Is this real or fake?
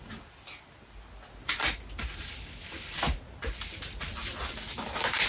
real